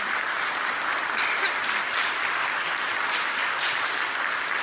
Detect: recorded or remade recorded